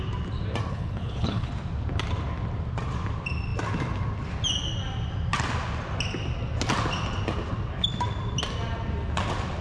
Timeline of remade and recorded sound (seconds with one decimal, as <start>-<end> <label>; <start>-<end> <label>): 0.0-0.7 recorded; 0.7-1.5 remade; 1.5-9.6 recorded